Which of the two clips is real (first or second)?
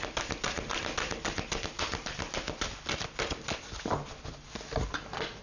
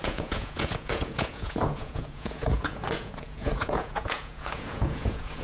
first